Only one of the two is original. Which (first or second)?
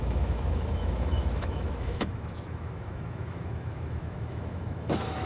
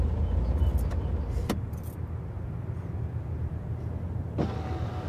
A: second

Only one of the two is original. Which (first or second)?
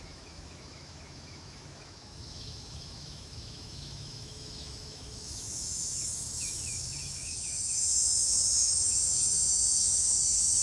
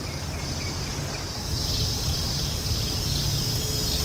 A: second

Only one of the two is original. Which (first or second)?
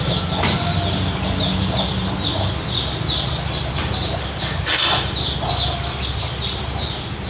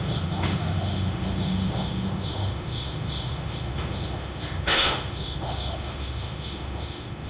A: first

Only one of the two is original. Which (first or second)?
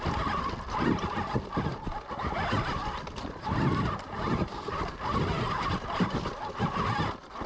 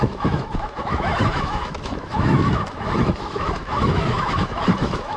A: first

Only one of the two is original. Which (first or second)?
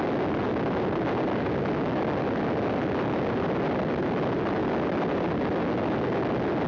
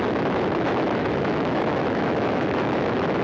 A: first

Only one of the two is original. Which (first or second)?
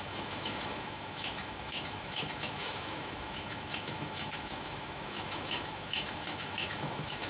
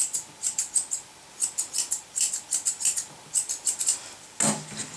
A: second